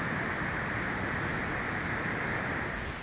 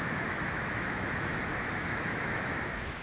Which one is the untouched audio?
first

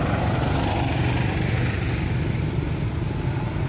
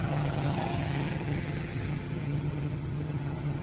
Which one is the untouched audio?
first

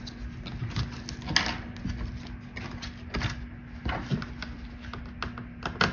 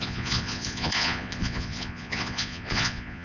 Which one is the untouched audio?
first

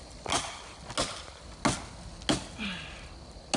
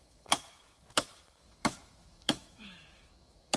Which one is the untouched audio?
first